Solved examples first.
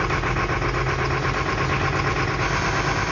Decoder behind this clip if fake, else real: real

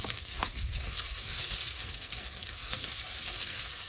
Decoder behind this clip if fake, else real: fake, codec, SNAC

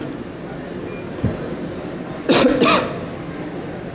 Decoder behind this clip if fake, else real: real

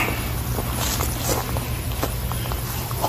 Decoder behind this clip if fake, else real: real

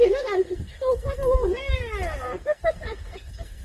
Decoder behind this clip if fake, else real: fake, codec, SNAC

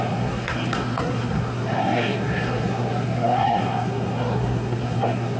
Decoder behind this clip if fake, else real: fake, codec, SNAC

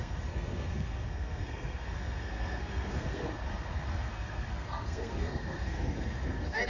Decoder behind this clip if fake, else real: fake, codec, SNAC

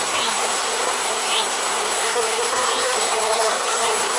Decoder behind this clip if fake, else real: fake, codec, SNAC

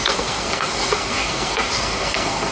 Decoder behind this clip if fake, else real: fake, codec, SNAC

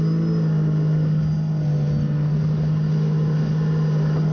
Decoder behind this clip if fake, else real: real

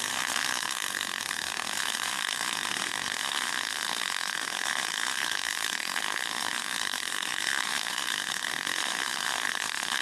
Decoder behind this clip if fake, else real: fake, codec, SNAC